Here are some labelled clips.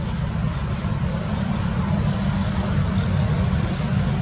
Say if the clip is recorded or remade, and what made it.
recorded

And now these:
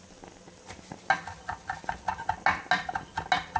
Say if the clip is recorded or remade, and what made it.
recorded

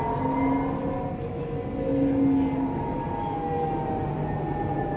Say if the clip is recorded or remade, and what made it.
recorded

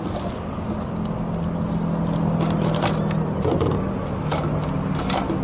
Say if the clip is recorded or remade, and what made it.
recorded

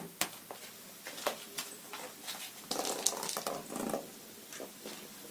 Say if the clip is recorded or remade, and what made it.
recorded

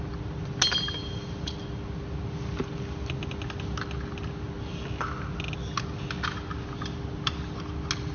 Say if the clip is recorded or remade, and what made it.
recorded